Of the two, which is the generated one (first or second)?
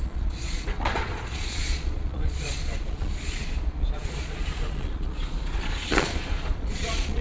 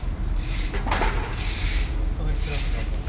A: first